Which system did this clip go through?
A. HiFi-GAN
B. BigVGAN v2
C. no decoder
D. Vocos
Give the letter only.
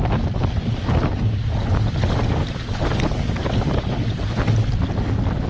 C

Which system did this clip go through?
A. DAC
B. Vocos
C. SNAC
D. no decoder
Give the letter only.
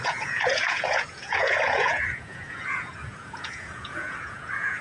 B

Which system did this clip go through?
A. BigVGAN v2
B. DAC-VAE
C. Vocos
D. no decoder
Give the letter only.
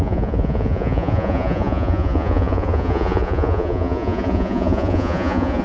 C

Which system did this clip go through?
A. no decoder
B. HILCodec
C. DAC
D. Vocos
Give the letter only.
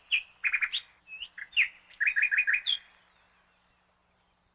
A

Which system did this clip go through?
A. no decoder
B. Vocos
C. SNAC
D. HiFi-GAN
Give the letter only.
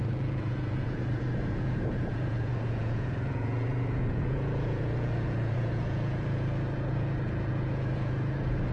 B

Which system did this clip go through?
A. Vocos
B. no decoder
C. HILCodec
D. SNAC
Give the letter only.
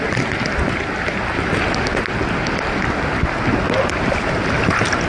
B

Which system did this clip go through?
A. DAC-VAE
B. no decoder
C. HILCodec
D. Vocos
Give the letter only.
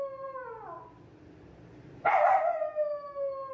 B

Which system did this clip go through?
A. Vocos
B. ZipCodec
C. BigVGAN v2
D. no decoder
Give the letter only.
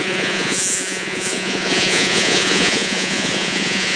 A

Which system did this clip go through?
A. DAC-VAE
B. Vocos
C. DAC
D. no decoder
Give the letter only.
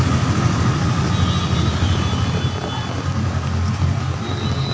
D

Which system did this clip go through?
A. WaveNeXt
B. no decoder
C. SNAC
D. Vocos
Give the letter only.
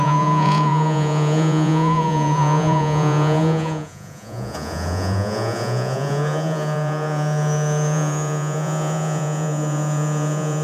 D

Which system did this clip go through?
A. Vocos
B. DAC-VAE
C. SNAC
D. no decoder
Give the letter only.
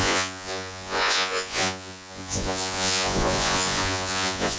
A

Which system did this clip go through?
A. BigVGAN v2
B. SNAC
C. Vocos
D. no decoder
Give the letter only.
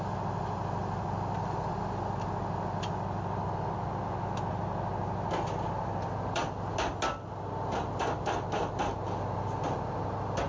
D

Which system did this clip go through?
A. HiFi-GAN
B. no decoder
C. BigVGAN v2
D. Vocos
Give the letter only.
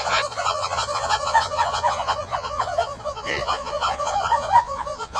D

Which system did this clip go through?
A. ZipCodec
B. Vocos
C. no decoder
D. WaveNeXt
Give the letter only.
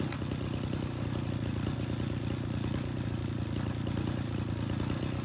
C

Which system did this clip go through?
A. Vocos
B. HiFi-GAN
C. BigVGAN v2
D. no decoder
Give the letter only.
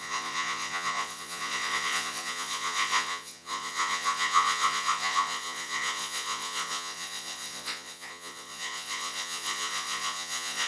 A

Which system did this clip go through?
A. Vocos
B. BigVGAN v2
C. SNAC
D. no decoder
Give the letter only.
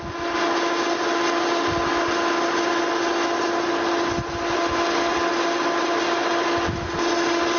D